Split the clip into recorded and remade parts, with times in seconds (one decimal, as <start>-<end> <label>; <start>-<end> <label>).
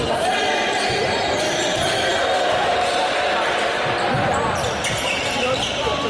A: 0.0-6.1 recorded